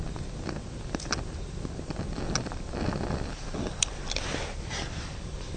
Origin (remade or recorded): recorded